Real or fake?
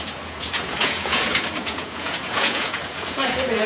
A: fake